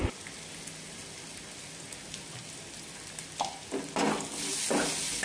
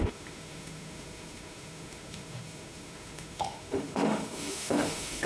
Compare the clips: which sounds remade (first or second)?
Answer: second